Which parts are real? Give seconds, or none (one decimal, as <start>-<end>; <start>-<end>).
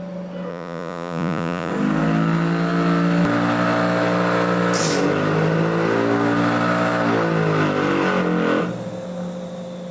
0.0-0.5; 1.7-9.9